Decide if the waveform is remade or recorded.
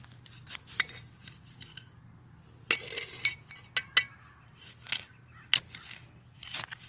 recorded